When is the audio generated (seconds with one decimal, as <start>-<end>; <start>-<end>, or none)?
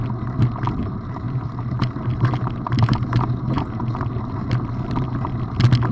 0.8-4.3